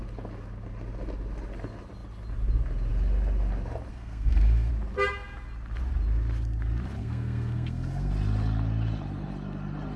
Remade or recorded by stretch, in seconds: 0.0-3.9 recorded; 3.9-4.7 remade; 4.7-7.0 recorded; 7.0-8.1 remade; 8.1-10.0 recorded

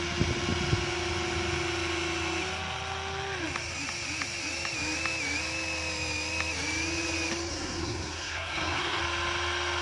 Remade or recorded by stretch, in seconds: 0.0-7.5 recorded; 7.5-9.0 remade; 9.0-9.8 recorded

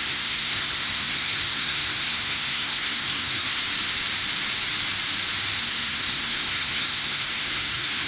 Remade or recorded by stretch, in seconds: 0.0-3.6 remade; 3.6-5.6 recorded; 5.6-8.1 remade

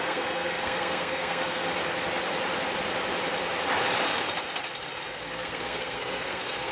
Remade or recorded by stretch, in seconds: 0.0-1.7 remade; 1.7-5.1 recorded; 5.1-6.7 remade